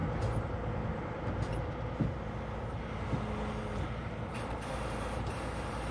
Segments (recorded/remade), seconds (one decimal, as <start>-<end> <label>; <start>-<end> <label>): 0.0-3.5 recorded; 3.5-5.9 remade